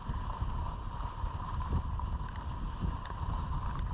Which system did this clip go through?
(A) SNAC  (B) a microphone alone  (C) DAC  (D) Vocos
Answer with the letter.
B